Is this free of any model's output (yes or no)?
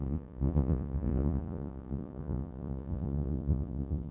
no